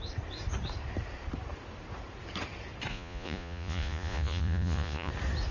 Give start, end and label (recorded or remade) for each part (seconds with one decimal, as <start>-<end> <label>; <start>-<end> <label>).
0.0-2.9 recorded; 2.9-5.1 remade; 5.1-5.5 recorded